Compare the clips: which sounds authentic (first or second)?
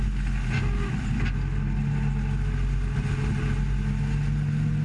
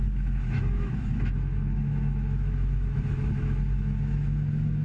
first